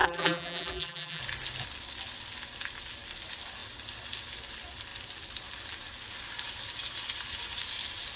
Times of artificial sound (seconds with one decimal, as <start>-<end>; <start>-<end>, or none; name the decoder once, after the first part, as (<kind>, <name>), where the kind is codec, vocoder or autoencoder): 0.0-1.2 (vocoder, BigVGAN v2)